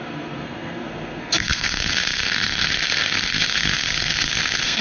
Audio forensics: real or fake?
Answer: fake